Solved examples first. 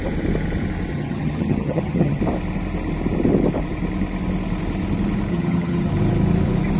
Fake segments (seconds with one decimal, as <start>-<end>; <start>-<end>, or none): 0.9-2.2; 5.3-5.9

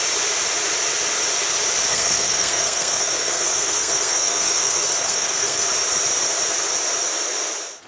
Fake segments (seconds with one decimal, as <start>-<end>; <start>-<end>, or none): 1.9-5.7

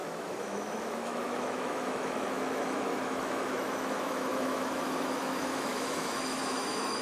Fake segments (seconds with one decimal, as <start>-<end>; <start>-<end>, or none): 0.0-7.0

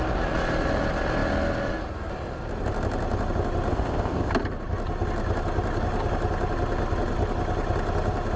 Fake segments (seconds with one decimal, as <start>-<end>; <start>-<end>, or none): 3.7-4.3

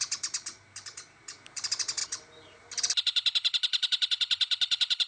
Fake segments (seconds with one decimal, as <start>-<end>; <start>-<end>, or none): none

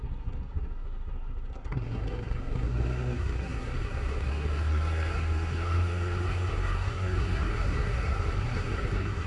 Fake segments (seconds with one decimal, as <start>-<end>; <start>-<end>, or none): 0.0-9.3

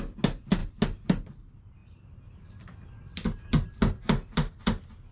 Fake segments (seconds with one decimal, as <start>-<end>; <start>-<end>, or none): none

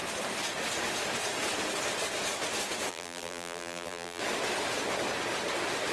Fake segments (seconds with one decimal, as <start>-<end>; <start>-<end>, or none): 2.9-4.2